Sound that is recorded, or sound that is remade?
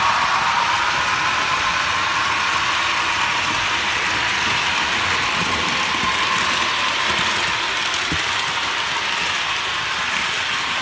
recorded